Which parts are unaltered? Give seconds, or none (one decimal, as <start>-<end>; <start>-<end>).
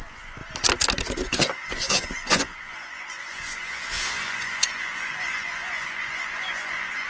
0.4-1.3